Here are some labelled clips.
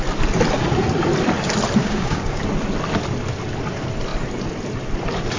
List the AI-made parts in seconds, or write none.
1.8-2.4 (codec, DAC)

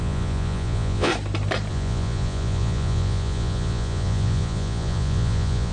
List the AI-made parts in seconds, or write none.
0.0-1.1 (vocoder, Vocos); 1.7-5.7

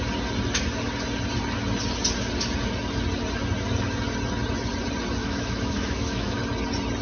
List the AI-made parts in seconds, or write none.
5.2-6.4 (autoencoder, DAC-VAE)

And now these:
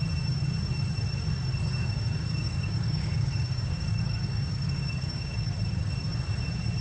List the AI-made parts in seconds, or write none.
1.8-5.9 (codec, DAC)

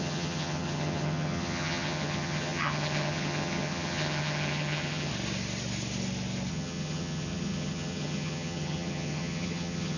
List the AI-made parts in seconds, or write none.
0.0-5.1 (vocoder, HiFi-GAN); 6.5-10.0